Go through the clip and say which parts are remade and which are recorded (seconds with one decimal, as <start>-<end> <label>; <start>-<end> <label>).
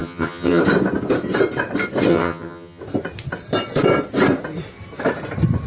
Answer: 0.0-0.6 remade; 0.6-2.1 recorded; 2.1-2.8 remade; 2.8-5.7 recorded